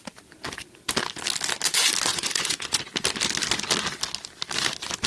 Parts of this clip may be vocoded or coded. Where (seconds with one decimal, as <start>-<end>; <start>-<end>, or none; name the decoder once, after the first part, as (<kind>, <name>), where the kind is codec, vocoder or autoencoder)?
2.1-2.8 (vocoder, Vocos)